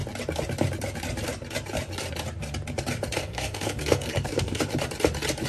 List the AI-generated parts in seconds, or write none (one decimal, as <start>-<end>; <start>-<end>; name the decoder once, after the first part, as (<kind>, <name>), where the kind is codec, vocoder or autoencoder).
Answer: 3.2-4.7 (codec, SNAC)